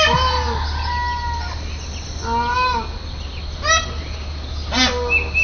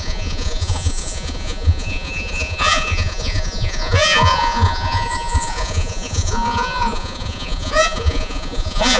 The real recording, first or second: first